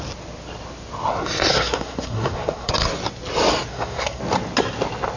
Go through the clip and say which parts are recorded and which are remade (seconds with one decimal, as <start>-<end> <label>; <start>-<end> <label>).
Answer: 0.0-1.5 recorded; 1.5-2.7 remade; 2.7-3.7 recorded; 3.7-4.2 remade; 4.2-5.2 recorded